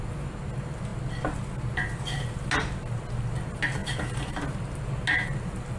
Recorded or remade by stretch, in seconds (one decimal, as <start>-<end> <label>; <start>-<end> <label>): 0.0-5.8 recorded